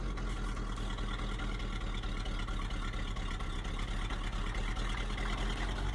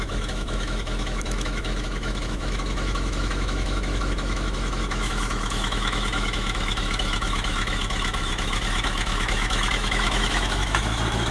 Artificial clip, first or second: second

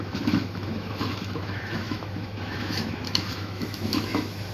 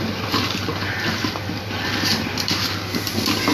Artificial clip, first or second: first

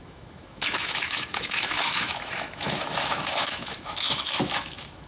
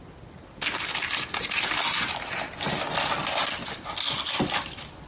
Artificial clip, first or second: first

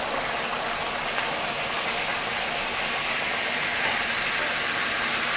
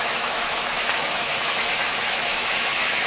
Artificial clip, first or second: second